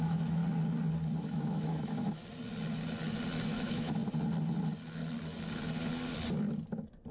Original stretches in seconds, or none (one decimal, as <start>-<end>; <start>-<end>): 0.4-1.2; 2.2-3.5; 4.0-7.1